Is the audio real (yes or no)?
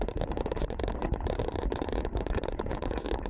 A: no